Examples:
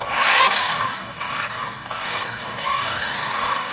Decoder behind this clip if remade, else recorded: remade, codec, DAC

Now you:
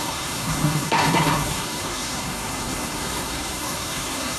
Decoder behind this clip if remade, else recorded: remade, codec, SNAC